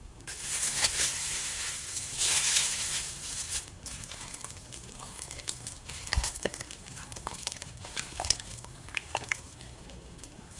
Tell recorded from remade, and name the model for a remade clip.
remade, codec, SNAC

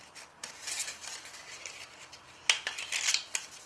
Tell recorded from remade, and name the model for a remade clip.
recorded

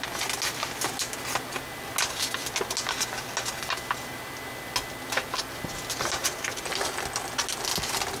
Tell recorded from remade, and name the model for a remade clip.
recorded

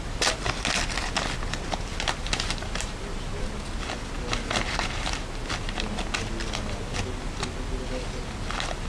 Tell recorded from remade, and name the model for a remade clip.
recorded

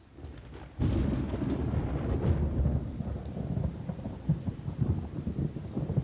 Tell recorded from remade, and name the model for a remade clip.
recorded